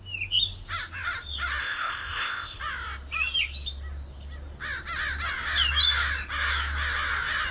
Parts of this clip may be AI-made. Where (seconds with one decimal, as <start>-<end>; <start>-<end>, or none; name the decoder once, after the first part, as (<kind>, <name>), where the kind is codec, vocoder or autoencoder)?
1.6-2.6 (codec, ZipCodec)